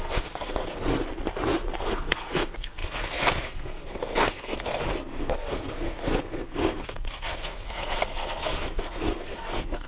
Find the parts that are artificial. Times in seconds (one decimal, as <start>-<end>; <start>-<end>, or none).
0.0-0.9; 1.8-9.9